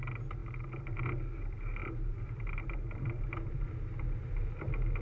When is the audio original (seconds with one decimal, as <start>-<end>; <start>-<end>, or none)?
0.0-1.8; 4.6-5.0